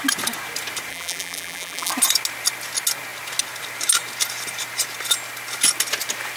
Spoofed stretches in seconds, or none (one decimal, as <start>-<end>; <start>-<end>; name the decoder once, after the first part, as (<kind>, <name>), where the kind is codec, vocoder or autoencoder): 0.9-1.9 (vocoder, BigVGAN v2)